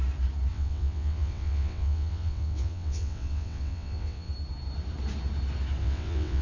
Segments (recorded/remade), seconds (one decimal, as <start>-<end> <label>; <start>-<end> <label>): 0.0-0.5 recorded; 0.5-4.3 remade; 4.3-5.8 recorded; 5.8-6.4 remade